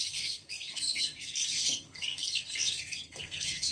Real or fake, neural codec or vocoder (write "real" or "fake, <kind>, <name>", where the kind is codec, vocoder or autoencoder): fake, codec, SNAC